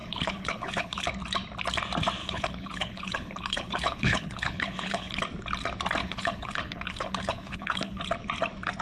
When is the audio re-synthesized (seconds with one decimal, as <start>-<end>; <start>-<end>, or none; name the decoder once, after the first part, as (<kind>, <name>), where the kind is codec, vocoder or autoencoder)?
0.0-1.1 (codec, HILCodec); 2.2-5.2; 6.0-8.0